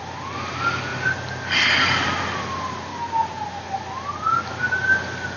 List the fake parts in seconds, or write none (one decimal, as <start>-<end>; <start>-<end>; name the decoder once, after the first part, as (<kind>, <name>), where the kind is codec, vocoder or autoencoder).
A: none